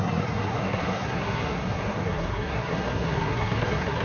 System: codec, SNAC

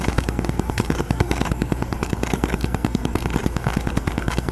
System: codec, SNAC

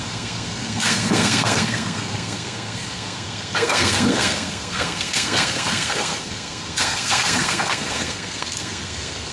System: codec, SNAC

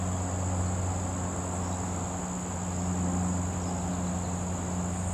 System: none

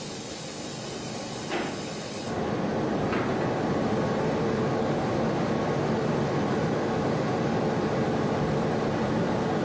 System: none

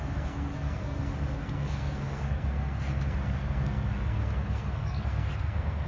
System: codec, SNAC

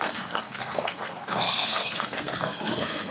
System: codec, SNAC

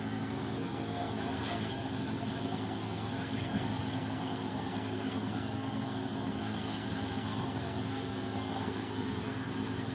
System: codec, SNAC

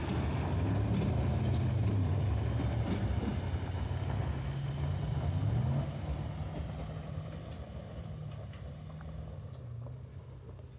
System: none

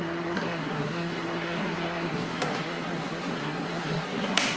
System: codec, SNAC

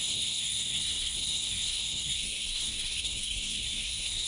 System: codec, SNAC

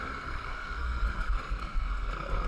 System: codec, SNAC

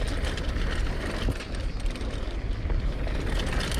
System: none